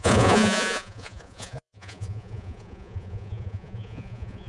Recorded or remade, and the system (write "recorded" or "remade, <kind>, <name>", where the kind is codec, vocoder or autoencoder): remade, vocoder, Vocos